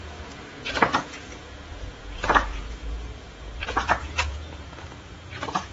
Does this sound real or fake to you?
fake